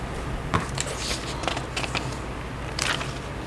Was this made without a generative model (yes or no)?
yes